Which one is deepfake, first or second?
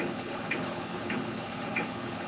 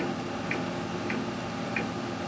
first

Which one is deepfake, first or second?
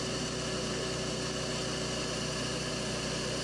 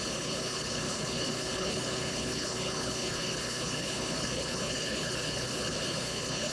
second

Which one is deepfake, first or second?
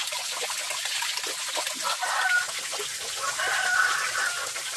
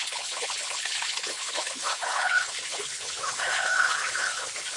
second